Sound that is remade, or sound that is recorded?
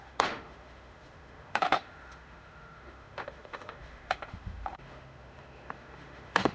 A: remade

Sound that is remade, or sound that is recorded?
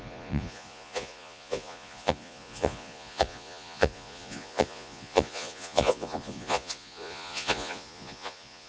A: remade